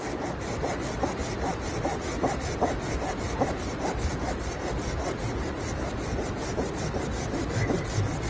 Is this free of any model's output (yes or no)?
yes